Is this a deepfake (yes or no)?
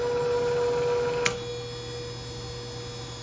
no